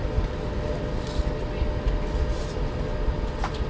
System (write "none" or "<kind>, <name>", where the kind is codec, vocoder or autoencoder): none